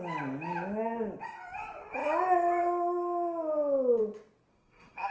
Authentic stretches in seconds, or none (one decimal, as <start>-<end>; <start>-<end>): 0.0-4.5